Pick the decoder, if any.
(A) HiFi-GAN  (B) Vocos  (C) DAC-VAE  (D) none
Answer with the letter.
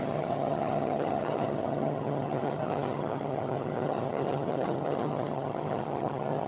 A